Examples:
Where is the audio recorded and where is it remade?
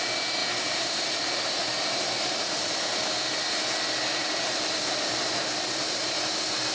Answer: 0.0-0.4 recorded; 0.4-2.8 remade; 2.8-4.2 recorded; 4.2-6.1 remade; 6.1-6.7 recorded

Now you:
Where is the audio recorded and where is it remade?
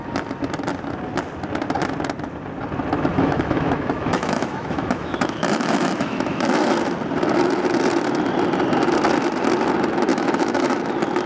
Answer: 0.0-3.1 recorded; 3.1-6.7 remade; 6.7-10.1 recorded; 10.1-10.8 remade; 10.8-11.3 recorded